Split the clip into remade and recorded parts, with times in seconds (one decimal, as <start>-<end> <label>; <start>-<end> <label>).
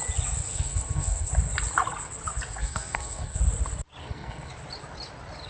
0.0-0.5 recorded; 0.5-1.3 remade; 1.3-2.6 recorded; 2.6-3.4 remade; 3.4-4.0 recorded; 4.0-4.5 remade; 4.5-5.5 recorded